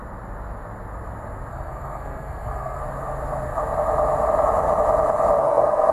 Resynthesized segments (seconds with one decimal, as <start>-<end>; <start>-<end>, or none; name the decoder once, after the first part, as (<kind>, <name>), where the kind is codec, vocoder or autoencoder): 1.5-2.8 (codec, SNAC); 5.4-5.9